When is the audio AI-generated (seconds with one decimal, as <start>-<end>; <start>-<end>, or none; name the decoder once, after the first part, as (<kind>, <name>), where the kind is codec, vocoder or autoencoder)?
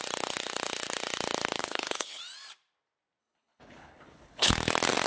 1.6-2.2 (codec, HILCodec); 3.2-4.5